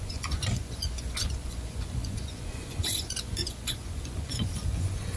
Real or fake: fake